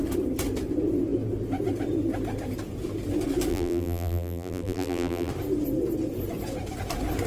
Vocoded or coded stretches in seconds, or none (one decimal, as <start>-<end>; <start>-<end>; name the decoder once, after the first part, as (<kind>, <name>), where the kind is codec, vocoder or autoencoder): 3.5-5.3 (vocoder, BigVGAN v2)